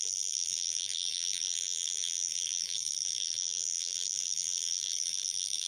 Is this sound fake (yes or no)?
yes